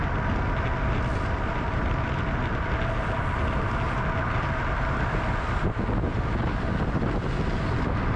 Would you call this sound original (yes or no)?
yes